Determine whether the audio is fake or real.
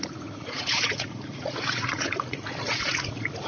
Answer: fake